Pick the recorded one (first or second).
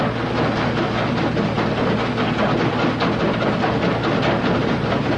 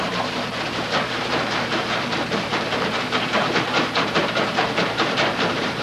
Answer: first